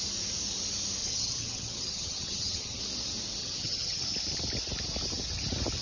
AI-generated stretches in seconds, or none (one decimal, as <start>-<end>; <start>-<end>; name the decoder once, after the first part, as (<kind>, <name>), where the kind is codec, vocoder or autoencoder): 1.0-2.8 (vocoder, HiFi-GAN); 3.4-4.0

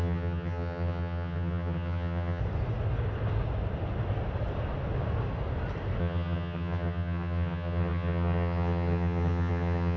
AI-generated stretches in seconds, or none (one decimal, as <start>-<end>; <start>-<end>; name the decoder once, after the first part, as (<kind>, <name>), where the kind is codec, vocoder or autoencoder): 0.0-2.4 (vocoder, HiFi-GAN); 6.0-10.0

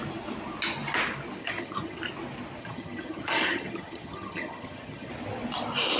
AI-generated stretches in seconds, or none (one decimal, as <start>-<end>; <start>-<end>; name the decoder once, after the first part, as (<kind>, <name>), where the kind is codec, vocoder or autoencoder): 1.4-2.0 (vocoder, HiFi-GAN); 2.6-5.1

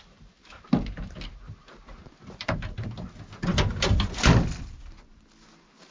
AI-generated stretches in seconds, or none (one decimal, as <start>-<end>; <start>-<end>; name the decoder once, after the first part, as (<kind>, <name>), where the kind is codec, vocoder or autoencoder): none

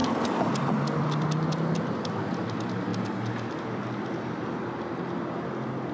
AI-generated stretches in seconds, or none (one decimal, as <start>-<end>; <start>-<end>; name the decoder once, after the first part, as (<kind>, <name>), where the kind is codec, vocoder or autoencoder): none

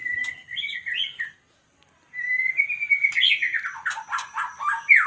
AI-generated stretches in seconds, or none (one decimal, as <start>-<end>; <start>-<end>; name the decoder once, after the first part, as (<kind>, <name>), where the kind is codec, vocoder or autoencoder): none

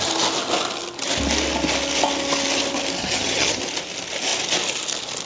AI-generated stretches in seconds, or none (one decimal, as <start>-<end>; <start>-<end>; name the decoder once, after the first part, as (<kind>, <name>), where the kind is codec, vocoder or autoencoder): 3.0-3.6 (vocoder, HiFi-GAN)

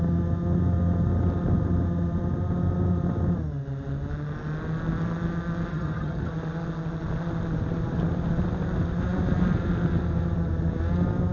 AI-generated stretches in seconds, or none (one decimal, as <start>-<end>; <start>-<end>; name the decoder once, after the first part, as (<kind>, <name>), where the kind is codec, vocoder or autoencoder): 5.7-6.3 (vocoder, HiFi-GAN)